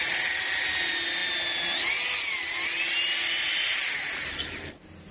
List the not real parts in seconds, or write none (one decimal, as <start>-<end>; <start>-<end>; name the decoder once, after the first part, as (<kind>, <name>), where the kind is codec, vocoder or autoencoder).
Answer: none